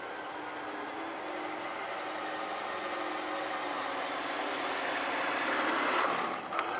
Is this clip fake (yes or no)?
no